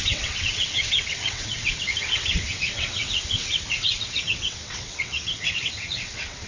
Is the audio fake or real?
fake